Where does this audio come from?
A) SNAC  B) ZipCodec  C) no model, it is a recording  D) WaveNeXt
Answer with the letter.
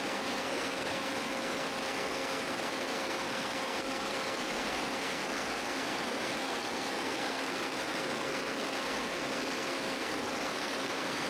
A